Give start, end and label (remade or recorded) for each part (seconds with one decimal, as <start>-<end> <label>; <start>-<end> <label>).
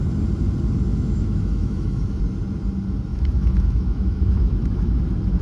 0.0-0.9 recorded; 0.9-2.2 remade; 2.2-3.1 recorded; 3.1-5.0 remade; 5.0-5.4 recorded